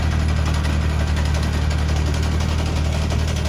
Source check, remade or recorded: recorded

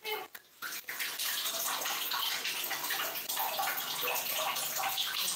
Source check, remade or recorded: recorded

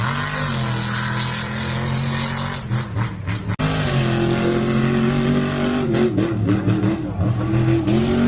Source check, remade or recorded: recorded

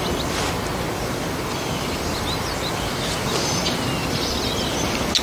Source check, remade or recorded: recorded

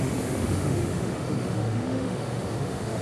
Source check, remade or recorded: remade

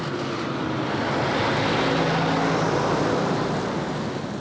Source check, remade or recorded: recorded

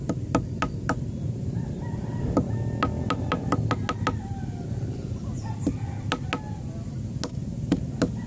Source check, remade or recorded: recorded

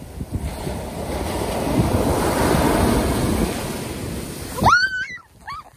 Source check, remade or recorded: recorded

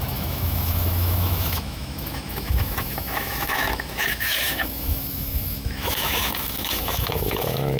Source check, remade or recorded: remade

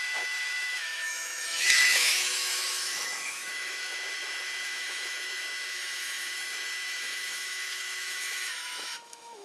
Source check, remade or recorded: remade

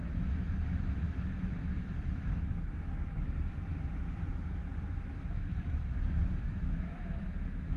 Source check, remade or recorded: remade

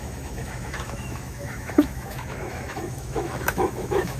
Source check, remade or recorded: remade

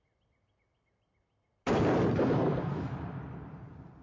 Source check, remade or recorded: recorded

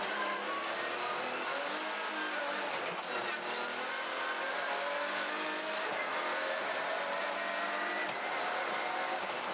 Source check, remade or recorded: recorded